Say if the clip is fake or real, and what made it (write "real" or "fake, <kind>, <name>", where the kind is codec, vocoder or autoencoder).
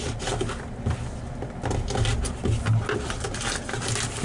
real